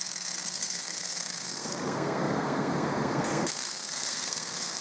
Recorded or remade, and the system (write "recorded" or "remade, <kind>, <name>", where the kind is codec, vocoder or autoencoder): remade, codec, SNAC